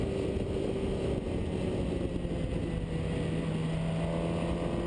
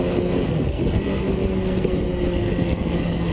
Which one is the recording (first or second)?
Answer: first